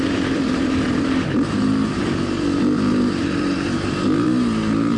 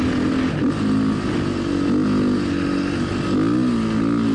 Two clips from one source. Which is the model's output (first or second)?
first